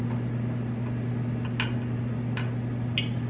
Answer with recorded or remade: recorded